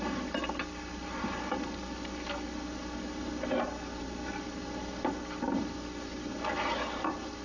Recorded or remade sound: recorded